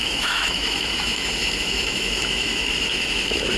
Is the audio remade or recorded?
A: remade